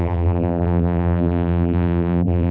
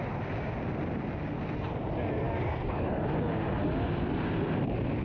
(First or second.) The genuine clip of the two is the second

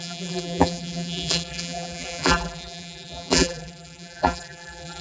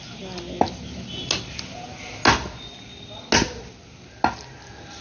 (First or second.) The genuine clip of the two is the second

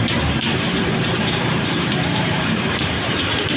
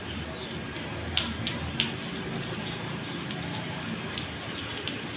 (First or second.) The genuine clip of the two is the second